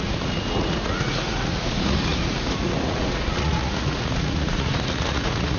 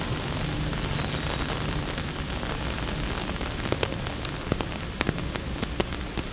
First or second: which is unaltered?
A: second